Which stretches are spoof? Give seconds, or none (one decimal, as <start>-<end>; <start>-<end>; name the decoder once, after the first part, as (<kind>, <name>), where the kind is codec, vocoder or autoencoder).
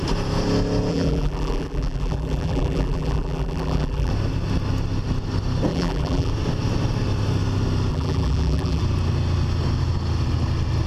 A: 0.9-4.1 (vocoder, BigVGAN v2); 5.7-6.3; 7.9-8.8